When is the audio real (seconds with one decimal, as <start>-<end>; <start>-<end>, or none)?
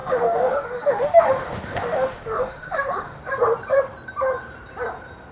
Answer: 3.2-5.3